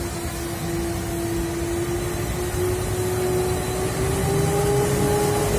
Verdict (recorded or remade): recorded